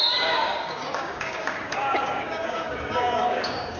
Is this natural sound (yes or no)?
no